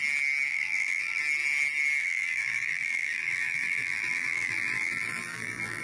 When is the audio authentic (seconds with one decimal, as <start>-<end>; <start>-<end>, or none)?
0.0-0.5; 1.2-2.0